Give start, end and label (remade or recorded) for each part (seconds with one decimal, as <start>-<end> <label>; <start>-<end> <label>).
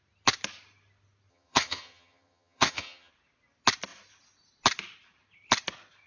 0.0-1.3 recorded; 1.3-3.1 remade; 3.1-6.1 recorded